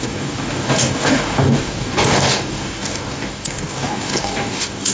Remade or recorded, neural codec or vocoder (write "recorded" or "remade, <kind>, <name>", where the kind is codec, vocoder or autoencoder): remade, codec, DAC